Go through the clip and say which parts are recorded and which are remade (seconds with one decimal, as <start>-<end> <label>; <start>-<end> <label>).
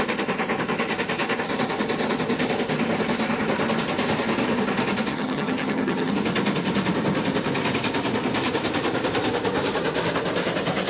0.0-5.1 recorded; 5.1-6.1 remade; 6.1-10.9 recorded